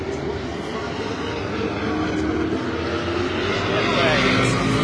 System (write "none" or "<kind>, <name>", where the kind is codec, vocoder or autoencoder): none